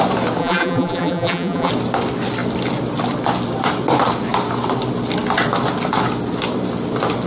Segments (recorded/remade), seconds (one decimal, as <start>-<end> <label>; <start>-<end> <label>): 0.0-0.4 recorded; 0.4-1.7 remade; 1.7-7.3 recorded